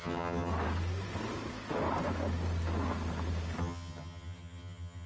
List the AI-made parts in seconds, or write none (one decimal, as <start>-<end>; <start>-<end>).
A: 0.0-0.5; 3.6-5.1